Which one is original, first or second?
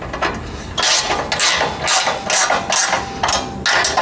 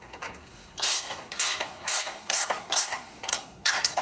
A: first